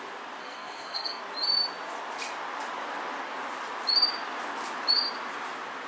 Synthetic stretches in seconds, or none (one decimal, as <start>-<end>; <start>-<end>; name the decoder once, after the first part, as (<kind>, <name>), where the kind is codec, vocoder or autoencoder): 0.4-1.2 (codec, SNAC)